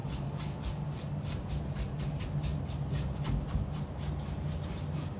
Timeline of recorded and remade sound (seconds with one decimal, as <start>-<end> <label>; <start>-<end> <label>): 0.0-5.2 recorded